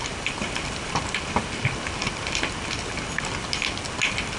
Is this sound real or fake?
real